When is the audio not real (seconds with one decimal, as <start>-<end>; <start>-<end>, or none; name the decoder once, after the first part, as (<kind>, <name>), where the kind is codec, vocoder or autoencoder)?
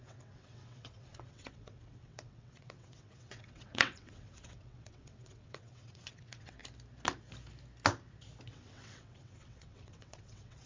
0.0-6.6 (vocoder, WaveNeXt); 8.5-10.7